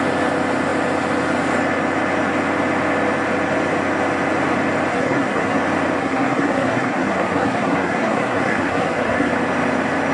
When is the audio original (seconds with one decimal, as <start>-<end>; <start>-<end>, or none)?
0.0-4.9; 5.6-6.0; 9.3-10.1